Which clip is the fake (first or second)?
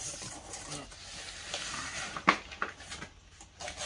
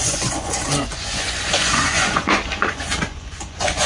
second